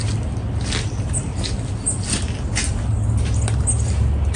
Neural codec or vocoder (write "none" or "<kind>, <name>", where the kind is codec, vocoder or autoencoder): none